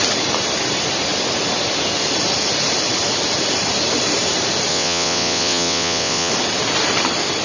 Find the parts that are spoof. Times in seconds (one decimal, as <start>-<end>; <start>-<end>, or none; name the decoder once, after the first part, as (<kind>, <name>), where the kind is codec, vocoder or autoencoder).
4.7-6.3 (vocoder, WaveNeXt)